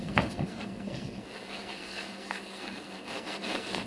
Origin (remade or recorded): remade